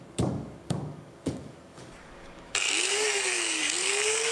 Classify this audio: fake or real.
fake